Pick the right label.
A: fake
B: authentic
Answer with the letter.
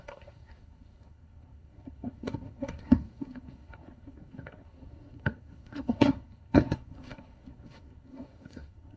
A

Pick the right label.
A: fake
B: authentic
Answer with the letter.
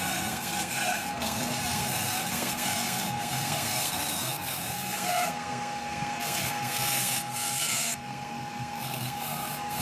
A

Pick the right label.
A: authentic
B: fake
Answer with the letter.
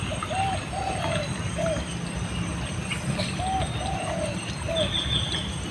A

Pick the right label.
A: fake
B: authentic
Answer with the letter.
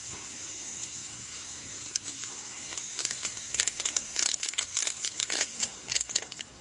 A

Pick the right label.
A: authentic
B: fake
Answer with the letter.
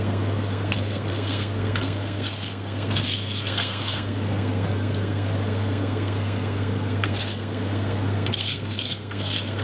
B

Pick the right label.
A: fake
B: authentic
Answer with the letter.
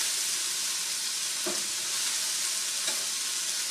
B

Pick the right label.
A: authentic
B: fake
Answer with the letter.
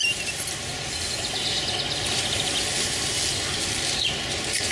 A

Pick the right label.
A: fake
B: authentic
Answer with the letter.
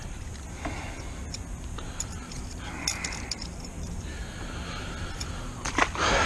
B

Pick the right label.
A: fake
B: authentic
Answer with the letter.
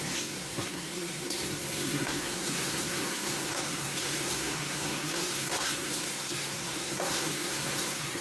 A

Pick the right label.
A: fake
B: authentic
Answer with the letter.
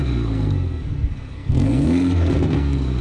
A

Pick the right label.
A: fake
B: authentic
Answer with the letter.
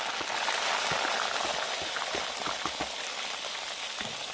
B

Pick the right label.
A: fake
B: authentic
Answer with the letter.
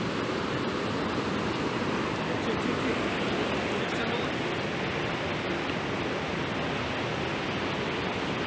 B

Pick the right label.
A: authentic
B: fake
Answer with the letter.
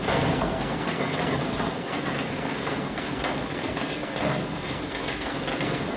B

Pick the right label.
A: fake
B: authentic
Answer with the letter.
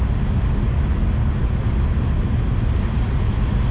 B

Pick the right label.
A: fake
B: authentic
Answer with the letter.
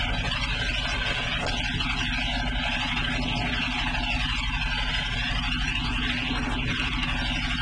B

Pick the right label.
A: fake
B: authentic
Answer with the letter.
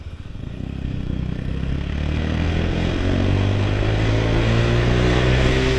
A